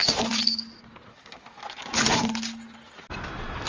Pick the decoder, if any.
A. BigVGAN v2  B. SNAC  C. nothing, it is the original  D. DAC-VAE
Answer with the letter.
C